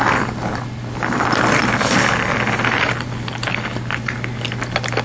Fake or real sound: real